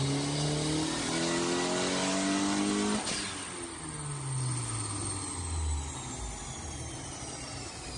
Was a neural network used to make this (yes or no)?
no